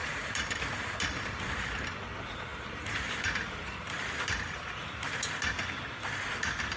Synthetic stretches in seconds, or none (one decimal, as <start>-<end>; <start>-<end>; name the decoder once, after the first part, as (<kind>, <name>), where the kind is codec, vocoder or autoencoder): 0.0-1.7 (vocoder, BigVGAN v2); 2.5-5.4